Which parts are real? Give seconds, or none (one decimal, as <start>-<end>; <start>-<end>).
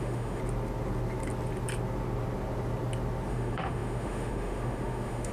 0.4-3.3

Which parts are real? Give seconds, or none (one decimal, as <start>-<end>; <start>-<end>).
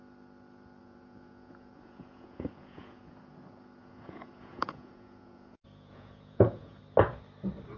0.0-0.8; 3.2-3.8; 6.8-7.8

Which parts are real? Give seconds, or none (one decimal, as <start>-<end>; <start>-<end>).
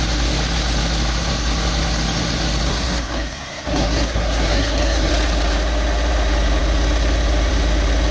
0.0-2.7; 5.1-8.1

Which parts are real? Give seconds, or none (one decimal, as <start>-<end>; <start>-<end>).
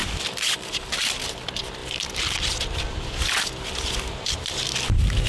1.4-1.8; 4.6-5.3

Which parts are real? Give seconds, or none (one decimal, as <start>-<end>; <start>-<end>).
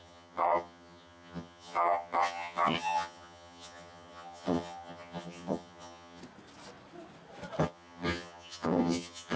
6.2-7.6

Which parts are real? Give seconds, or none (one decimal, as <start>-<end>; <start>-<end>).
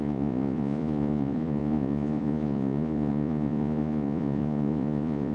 none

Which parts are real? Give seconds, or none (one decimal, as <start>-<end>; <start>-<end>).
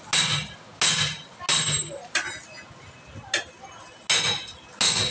0.0-5.1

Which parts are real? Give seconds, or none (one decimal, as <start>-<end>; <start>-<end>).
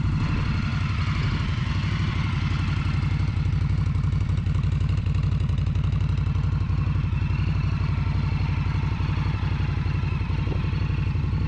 0.0-11.5